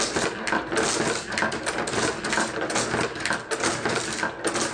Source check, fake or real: real